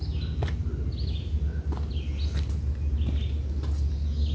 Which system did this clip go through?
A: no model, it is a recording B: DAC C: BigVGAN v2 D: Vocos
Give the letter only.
A